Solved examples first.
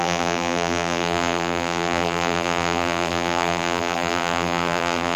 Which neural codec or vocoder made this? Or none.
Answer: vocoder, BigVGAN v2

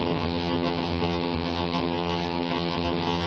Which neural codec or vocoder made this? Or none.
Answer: vocoder, HiFi-GAN